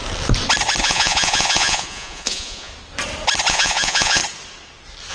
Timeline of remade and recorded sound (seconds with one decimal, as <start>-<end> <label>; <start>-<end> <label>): 0.0-0.8 recorded; 0.8-2.7 remade; 2.7-3.5 recorded; 3.5-4.2 remade; 4.2-5.1 recorded